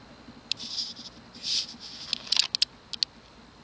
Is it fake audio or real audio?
real